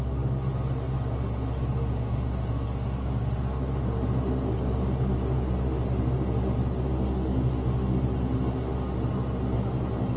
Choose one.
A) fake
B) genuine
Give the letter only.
B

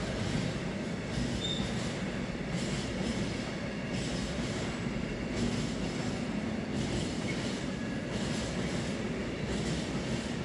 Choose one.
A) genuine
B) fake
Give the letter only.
A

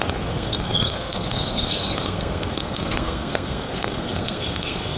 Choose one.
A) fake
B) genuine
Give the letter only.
A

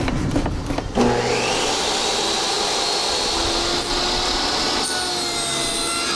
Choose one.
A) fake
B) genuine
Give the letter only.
B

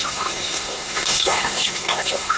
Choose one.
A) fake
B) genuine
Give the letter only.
A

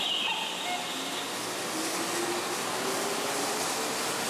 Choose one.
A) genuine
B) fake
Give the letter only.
A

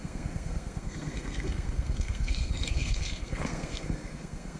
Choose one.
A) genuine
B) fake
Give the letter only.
B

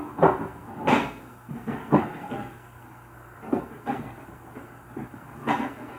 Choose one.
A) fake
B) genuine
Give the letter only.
A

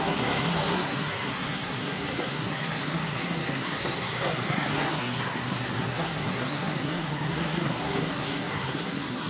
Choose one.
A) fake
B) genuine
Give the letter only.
A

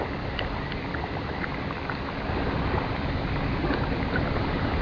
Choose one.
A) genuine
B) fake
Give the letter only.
A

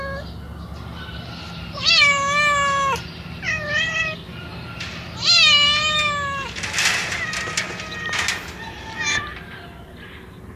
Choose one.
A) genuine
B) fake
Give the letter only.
A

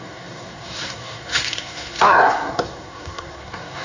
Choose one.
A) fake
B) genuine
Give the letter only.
A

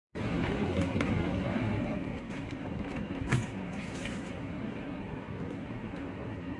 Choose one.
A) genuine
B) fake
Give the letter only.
B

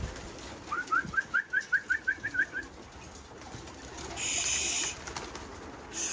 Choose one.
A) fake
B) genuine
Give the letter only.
B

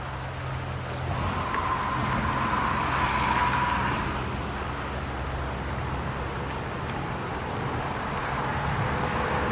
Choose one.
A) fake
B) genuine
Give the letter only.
B